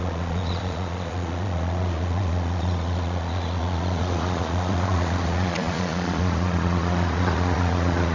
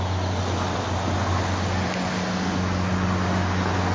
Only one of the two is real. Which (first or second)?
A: second